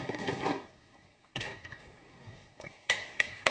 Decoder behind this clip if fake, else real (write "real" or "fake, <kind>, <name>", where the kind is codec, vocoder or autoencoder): fake, codec, SNAC